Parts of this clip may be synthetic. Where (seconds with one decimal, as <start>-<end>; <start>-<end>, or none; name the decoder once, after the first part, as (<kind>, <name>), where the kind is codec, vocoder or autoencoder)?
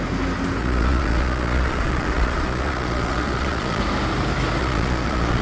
0.6-3.8 (vocoder, Vocos); 4.6-5.4